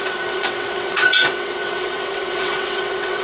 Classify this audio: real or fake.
fake